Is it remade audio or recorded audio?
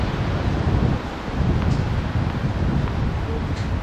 recorded